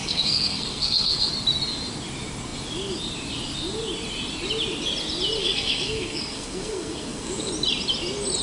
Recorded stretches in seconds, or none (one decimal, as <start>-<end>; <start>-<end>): 1.3-5.4; 7.5-8.4